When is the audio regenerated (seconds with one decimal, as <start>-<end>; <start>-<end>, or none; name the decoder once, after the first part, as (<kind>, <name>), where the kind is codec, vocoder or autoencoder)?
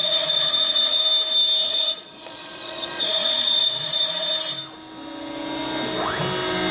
0.0-1.0 (vocoder, Vocos); 1.6-4.3